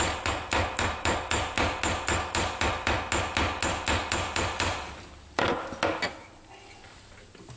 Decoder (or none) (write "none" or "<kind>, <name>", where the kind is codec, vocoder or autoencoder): none